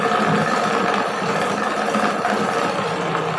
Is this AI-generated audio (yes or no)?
no